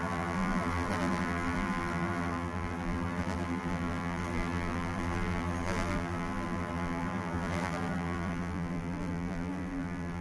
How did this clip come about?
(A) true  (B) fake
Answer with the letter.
B